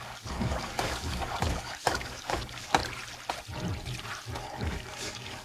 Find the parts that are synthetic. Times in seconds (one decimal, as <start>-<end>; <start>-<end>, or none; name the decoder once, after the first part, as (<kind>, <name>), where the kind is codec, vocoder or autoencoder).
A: 0.0-2.8 (codec, DAC); 4.4-5.4